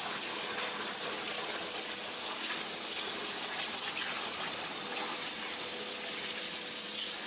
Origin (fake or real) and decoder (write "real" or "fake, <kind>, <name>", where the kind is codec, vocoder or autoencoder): real